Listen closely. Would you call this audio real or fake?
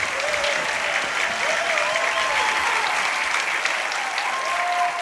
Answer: real